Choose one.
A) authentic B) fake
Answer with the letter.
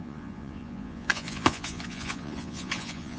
B